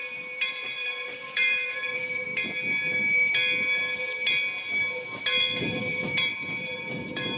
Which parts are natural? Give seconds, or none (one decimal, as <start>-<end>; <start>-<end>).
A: 0.0-0.5; 2.3-5.6